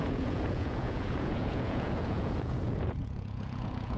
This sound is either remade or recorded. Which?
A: remade